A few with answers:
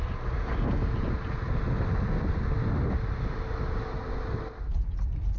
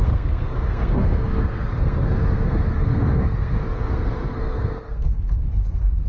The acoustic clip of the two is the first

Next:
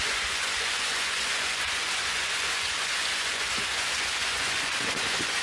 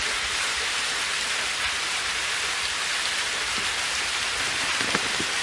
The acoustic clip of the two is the second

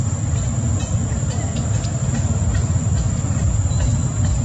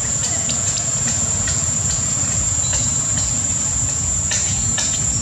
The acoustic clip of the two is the first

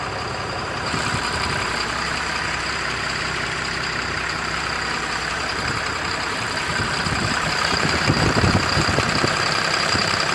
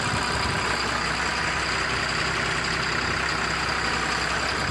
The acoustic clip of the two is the second